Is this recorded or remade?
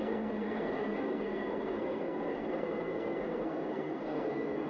remade